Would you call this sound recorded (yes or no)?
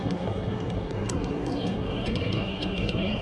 no